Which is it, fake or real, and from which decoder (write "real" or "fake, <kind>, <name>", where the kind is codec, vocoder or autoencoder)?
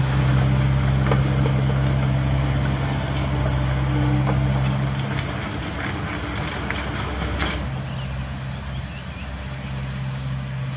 real